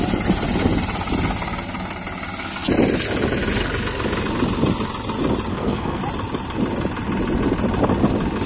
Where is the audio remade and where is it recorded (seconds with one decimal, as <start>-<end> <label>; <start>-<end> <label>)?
0.0-5.5 recorded; 5.5-6.0 remade; 6.0-8.5 recorded